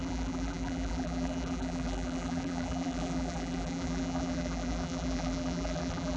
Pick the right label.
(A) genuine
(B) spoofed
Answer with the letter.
B